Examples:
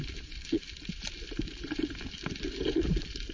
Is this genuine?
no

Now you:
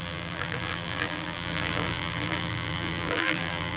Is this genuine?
no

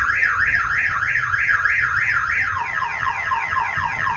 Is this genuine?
no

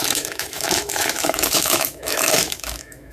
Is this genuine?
no